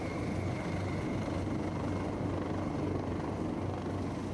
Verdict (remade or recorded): recorded